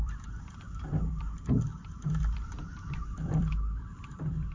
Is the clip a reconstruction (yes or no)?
yes